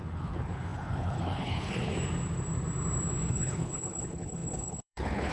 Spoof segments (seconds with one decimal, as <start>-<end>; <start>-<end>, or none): 0.0-1.9; 3.3-5.3